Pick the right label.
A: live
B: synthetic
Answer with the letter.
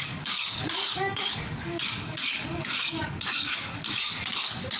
B